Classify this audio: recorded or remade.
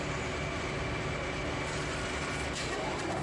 recorded